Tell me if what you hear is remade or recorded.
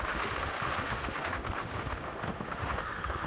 remade